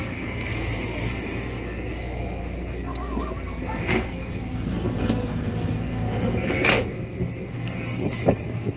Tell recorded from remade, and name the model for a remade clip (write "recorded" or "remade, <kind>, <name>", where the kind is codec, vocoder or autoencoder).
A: remade, codec, SNAC